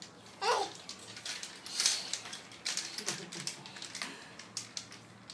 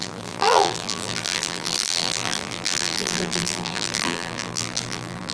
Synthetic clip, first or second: second